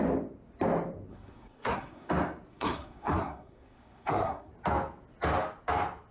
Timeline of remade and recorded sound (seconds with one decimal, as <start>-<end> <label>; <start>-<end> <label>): 0.0-1.1 recorded; 1.1-2.1 remade; 2.1-2.5 recorded; 2.5-4.5 remade; 4.5-6.1 recorded